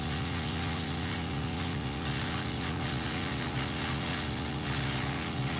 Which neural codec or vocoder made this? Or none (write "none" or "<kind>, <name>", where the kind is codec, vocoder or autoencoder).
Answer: vocoder, Vocos